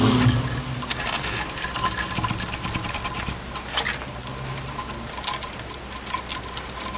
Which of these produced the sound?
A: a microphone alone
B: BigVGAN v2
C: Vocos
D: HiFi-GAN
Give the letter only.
A